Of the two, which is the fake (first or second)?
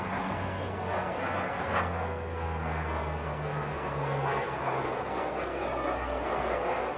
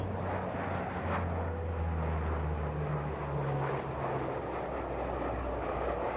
first